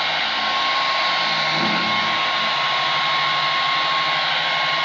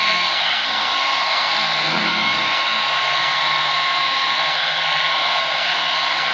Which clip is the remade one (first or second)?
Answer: second